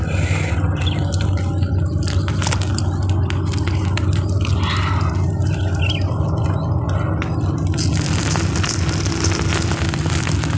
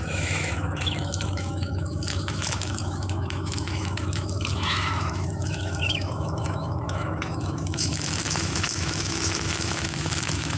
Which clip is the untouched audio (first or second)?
first